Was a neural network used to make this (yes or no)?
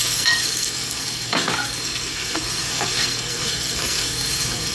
yes